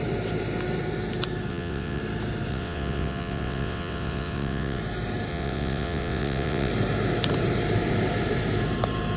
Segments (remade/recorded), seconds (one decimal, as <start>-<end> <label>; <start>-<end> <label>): 0.0-1.5 recorded; 1.5-2.0 remade; 2.0-2.5 recorded; 2.5-4.8 remade; 4.8-5.3 recorded; 5.3-6.7 remade; 6.7-9.2 recorded